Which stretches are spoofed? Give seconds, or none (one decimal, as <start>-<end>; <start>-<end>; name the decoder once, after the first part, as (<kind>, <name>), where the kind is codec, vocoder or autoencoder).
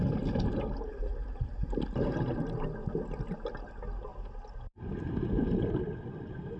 none